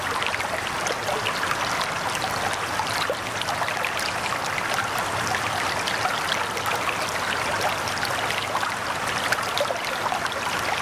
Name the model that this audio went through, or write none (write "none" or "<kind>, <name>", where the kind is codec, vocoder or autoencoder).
none